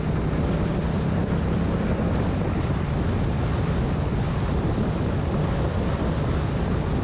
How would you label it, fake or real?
real